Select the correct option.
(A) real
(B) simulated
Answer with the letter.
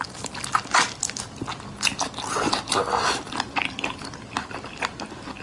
A